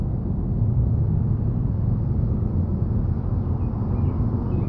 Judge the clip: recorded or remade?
recorded